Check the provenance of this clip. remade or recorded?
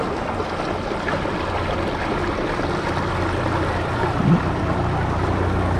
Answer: recorded